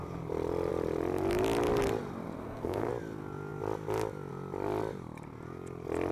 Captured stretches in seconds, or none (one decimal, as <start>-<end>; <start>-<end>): 0.0-2.4; 2.9-6.1